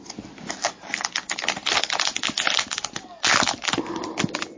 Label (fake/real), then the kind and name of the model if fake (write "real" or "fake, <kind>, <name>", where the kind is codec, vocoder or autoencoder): real